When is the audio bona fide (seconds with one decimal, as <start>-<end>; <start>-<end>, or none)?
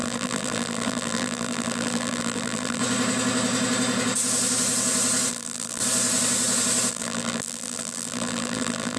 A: 2.8-5.3; 5.8-6.9